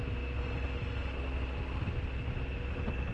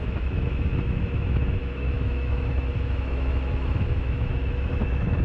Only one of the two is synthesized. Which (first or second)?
second